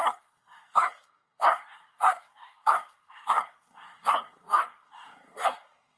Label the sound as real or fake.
fake